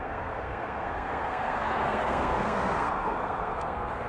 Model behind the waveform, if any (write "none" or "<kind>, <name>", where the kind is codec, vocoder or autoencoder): codec, SNAC